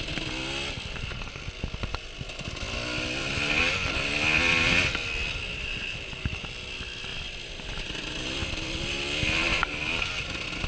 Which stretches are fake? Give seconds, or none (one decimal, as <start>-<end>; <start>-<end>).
none